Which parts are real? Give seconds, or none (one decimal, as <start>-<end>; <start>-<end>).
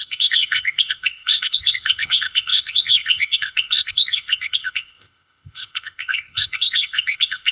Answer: none